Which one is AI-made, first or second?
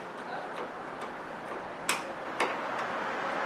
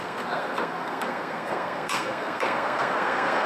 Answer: second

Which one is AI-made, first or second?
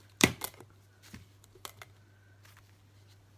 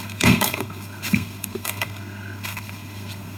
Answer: second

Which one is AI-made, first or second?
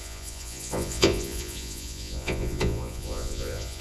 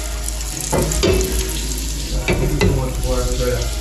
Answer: first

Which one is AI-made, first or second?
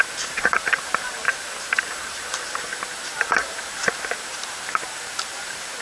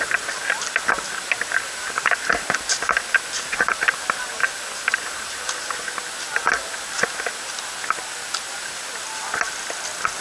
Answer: first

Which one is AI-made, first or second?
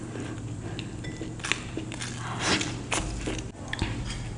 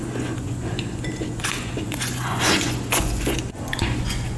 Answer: second